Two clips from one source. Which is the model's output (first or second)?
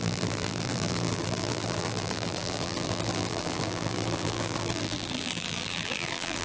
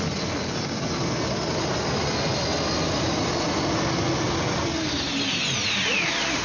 first